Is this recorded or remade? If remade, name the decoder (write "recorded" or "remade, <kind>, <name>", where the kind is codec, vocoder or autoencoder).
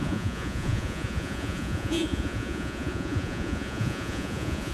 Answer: remade, vocoder, Vocos